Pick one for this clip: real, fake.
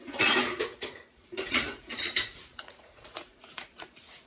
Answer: fake